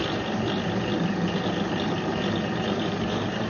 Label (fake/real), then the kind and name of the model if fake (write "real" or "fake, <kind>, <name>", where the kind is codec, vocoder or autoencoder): real